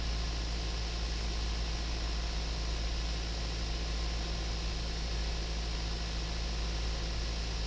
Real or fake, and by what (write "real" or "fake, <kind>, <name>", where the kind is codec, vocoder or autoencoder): real